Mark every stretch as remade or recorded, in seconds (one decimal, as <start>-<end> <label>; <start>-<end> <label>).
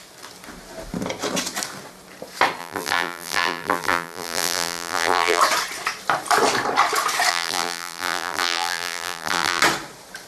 0.0-2.6 recorded; 2.6-5.4 remade; 5.4-7.3 recorded; 7.3-9.6 remade; 9.6-10.3 recorded